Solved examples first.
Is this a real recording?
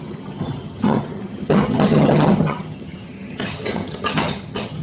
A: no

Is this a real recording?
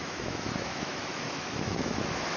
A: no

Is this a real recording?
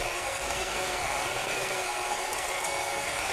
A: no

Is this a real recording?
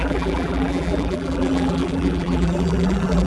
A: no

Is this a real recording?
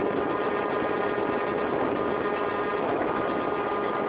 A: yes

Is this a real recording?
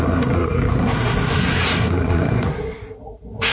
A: no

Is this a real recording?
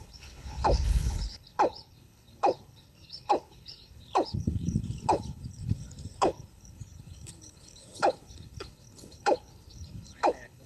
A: no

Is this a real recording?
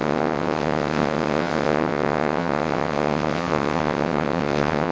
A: no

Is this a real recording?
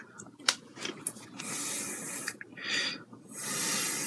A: yes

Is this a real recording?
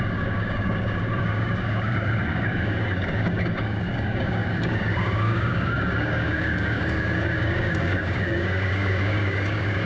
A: no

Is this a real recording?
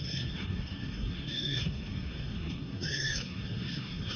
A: no